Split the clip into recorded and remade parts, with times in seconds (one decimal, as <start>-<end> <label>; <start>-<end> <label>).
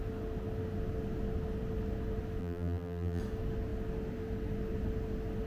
0.0-2.4 recorded; 2.4-3.2 remade; 3.2-5.5 recorded